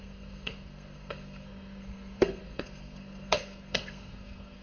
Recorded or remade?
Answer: remade